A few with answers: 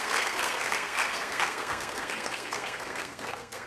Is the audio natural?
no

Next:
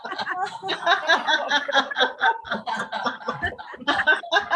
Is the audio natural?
yes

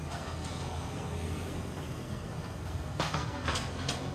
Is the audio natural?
no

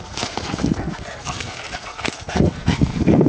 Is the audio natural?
no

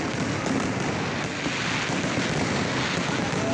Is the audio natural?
yes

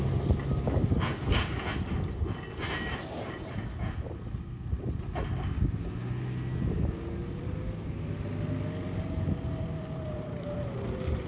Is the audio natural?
yes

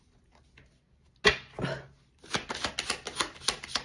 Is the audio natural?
yes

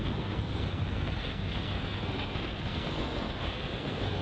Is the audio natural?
no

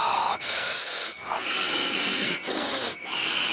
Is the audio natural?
no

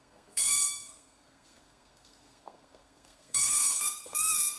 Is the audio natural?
no